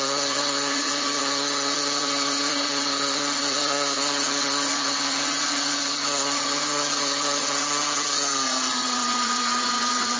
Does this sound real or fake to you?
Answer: fake